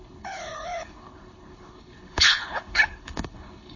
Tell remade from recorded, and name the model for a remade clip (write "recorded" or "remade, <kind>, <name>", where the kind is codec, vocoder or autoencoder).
remade, codec, HILCodec